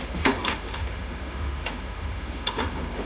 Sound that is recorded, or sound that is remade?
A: remade